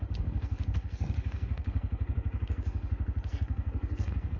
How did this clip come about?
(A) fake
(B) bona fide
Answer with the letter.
A